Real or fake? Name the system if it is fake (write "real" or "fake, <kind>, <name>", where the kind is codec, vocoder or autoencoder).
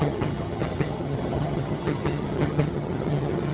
fake, vocoder, HiFi-GAN